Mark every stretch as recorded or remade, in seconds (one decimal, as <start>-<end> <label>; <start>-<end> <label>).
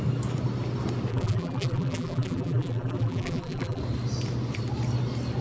0.0-1.1 recorded; 1.1-3.8 remade; 3.8-5.4 recorded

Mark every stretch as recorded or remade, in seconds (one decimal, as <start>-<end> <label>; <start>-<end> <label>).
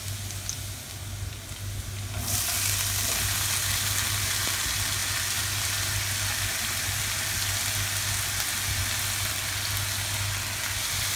0.0-11.2 recorded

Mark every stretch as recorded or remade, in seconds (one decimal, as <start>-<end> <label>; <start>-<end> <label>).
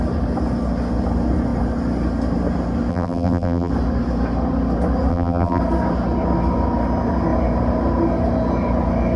0.0-2.9 recorded; 2.9-3.7 remade; 3.7-5.1 recorded; 5.1-5.6 remade; 5.6-9.2 recorded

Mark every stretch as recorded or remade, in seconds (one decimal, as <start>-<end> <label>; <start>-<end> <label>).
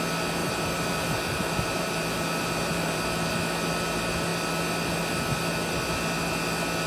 0.0-0.4 recorded; 0.4-3.0 remade; 3.0-6.9 recorded